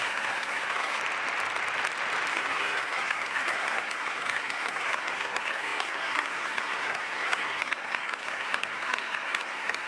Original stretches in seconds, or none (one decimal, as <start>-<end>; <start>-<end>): 1.0-2.3